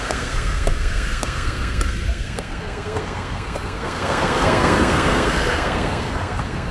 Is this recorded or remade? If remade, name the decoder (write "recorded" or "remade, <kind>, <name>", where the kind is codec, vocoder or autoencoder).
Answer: remade, codec, SNAC